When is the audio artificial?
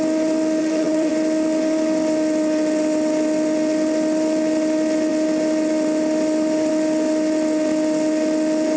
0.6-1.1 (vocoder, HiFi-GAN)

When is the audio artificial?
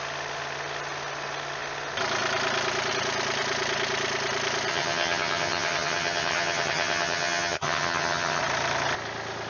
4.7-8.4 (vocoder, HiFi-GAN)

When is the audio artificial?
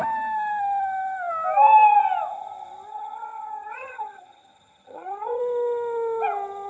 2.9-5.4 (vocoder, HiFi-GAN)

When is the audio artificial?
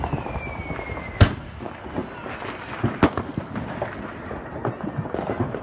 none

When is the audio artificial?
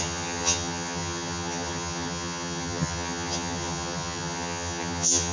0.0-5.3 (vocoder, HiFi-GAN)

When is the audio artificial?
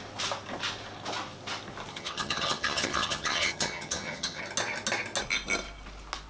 1.9-4.4 (vocoder, HiFi-GAN)